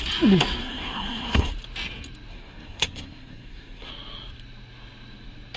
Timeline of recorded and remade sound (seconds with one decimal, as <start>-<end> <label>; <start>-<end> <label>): 0.0-0.6 recorded; 0.6-1.5 remade; 1.5-2.3 recorded; 2.3-3.9 remade; 3.9-5.6 recorded